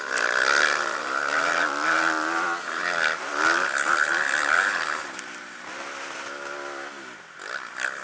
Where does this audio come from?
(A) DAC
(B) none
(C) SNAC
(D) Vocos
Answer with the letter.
B